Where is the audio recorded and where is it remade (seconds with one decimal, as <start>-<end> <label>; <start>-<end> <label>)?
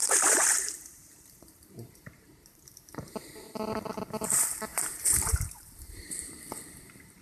0.0-4.3 remade; 4.3-4.7 recorded; 4.7-6.4 remade; 6.4-7.2 recorded